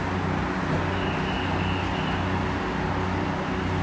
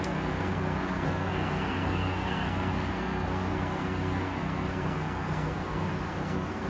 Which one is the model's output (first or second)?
second